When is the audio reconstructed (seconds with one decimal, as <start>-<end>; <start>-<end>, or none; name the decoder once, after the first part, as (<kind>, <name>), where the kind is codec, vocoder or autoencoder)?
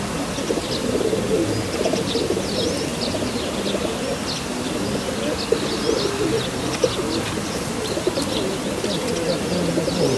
none